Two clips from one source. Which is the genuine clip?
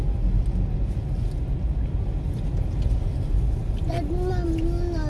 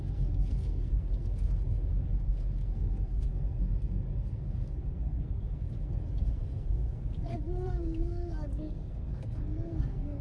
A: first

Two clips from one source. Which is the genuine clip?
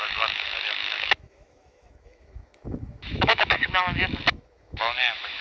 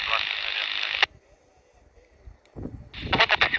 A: second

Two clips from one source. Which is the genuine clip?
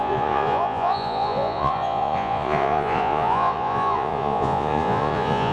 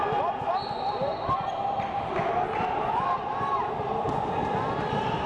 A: second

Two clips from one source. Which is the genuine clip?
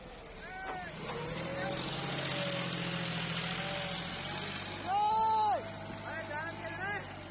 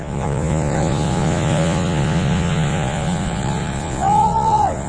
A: first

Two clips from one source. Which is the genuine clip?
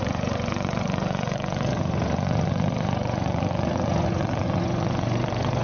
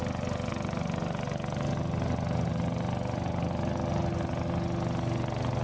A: second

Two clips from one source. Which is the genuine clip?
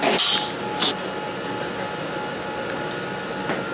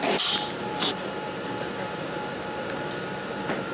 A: first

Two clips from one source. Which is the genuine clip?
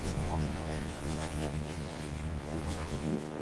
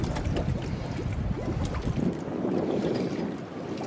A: second